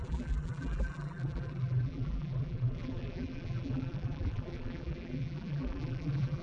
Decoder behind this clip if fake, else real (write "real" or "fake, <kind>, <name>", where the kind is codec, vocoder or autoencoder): fake, vocoder, BigVGAN v2